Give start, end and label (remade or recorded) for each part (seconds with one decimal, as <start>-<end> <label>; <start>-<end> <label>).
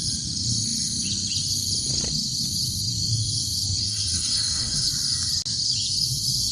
0.0-3.8 recorded; 3.8-4.9 remade; 4.9-6.5 recorded